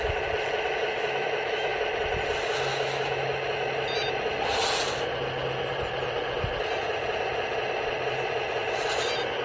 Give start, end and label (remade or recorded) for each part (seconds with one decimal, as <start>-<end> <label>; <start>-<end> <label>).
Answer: 0.0-0.9 recorded; 0.9-1.8 remade; 1.8-2.7 recorded; 2.7-3.8 remade; 3.8-9.4 recorded